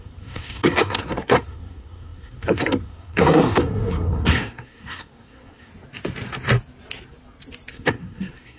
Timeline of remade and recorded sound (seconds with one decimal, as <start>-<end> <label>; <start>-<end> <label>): 0.0-5.7 remade; 5.7-7.7 recorded; 7.7-8.6 remade